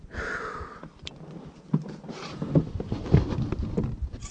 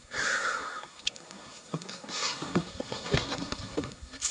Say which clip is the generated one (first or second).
second